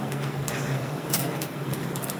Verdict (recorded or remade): remade